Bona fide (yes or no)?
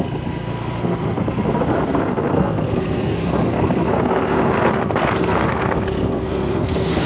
no